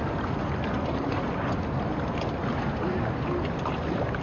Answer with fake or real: real